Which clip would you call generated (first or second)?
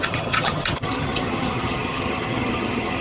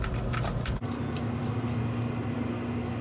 first